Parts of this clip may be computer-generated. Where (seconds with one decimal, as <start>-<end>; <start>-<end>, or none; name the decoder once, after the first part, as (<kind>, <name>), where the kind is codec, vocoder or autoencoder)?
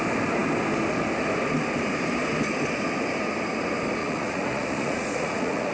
4.0-5.7 (vocoder, Vocos)